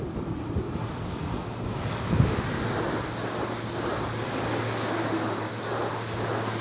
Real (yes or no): yes